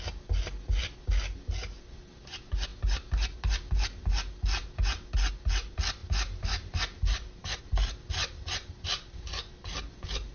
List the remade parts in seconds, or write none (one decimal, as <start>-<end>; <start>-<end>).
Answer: 6.0-7.6